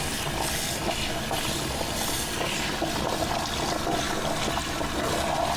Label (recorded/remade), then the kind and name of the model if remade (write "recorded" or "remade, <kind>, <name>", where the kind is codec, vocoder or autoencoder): recorded